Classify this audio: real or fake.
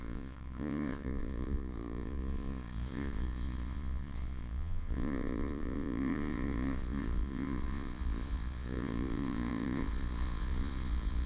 fake